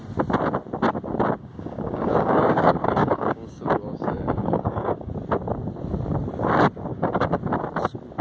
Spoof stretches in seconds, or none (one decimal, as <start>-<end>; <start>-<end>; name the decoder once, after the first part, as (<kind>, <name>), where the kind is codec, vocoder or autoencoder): 1.4-5.1 (codec, DAC); 6.9-7.4